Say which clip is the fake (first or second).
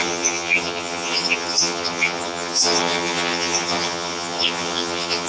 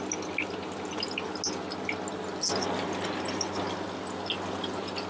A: first